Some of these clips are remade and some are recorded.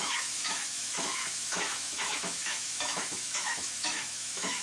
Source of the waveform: remade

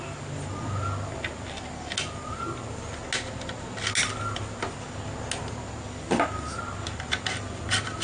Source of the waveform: recorded